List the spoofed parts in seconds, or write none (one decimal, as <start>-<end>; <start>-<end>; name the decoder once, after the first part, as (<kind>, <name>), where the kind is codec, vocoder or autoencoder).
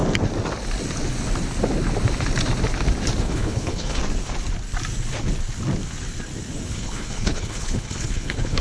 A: 3.2-4.0 (codec, HILCodec); 6.7-8.6